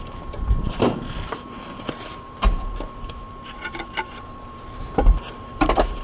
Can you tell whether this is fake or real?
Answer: fake